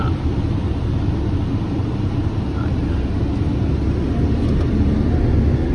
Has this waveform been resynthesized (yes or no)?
no